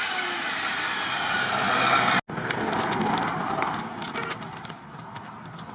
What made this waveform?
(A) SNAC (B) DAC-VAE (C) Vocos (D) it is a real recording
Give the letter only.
D